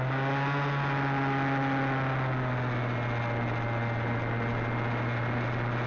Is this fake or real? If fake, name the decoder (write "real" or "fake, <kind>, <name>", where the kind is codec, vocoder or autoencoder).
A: real